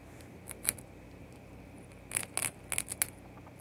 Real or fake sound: real